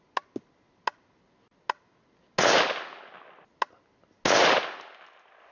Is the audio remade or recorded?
recorded